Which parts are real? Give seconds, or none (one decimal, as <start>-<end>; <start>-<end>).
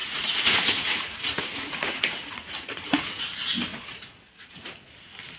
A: 3.2-3.7; 4.9-5.4